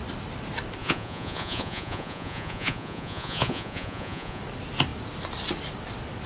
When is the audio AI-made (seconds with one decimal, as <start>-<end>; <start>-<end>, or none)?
0.8-4.4